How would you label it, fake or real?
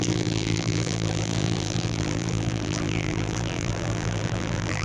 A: fake